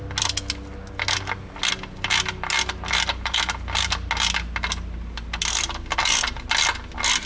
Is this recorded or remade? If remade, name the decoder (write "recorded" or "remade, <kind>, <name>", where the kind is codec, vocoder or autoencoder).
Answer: recorded